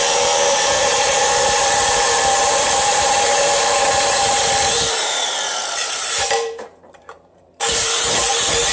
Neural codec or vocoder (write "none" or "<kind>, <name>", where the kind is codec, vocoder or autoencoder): vocoder, BigVGAN v2